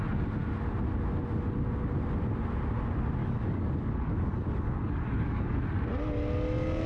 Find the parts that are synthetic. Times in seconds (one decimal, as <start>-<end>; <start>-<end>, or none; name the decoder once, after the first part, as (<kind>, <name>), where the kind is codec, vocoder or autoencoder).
3.2-5.6 (codec, DAC)